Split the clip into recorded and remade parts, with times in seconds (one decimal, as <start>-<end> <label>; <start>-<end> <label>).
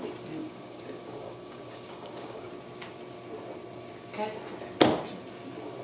0.0-0.4 recorded; 0.4-2.5 remade; 2.5-5.8 recorded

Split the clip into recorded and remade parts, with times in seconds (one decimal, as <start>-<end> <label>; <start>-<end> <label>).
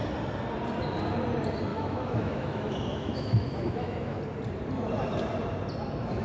0.0-1.7 recorded; 1.7-4.2 remade; 4.2-6.2 recorded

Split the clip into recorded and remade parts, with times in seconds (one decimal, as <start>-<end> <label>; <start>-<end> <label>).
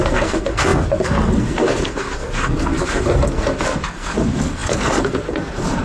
0.0-5.8 remade